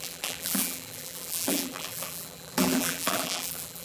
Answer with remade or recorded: remade